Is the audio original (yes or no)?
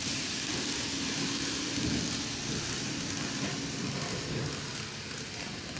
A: yes